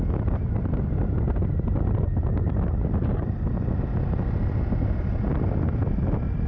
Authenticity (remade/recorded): recorded